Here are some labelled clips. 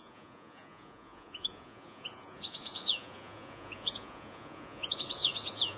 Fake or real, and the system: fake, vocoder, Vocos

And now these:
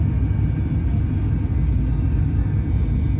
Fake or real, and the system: real